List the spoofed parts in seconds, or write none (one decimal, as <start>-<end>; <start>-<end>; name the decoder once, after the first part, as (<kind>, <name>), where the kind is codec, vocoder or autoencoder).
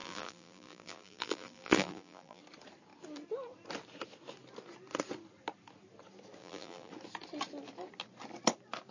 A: 0.0-2.4 (vocoder, BigVGAN v2); 6.4-6.9